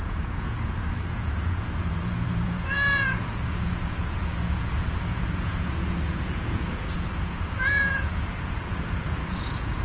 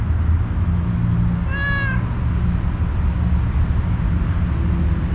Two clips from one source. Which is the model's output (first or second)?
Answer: first